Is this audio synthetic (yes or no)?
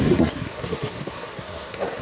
yes